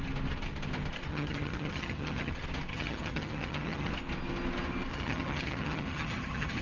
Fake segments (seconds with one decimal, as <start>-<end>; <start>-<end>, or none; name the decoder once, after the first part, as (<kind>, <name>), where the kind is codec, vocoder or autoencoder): 1.1-2.3 (vocoder, HiFi-GAN); 2.7-3.9; 4.9-6.6